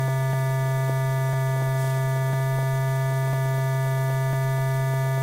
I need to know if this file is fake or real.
real